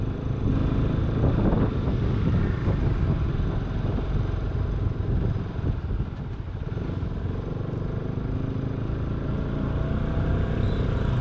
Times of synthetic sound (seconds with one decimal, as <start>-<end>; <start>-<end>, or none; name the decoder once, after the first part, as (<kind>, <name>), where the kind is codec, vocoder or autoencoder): none